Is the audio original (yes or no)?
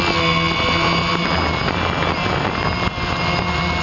yes